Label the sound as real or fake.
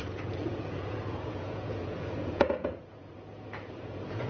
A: fake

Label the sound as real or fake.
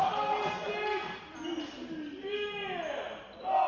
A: real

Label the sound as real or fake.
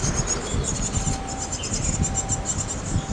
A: real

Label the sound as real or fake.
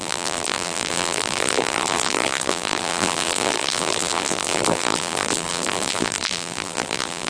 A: fake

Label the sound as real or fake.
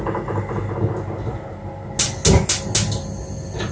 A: real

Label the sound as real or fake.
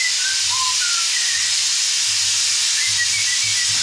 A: real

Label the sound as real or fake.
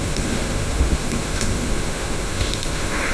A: fake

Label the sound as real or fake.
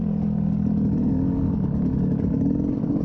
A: fake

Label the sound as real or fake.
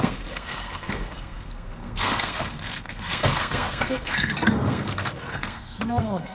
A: fake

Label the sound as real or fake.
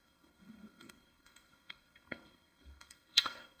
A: fake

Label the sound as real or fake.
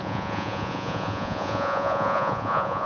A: fake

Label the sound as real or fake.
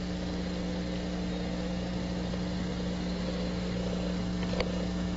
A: real